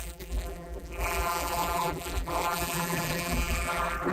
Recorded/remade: remade